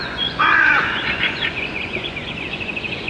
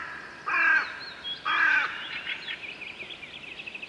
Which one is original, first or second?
second